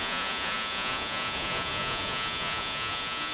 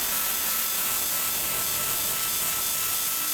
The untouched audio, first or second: second